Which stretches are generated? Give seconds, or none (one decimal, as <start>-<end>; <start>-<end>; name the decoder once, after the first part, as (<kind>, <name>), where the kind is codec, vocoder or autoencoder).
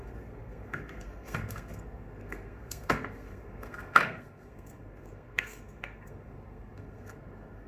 0.0-7.7 (codec, SNAC)